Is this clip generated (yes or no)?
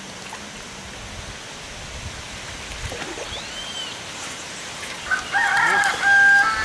no